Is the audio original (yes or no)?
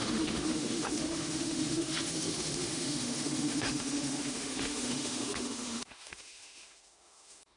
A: no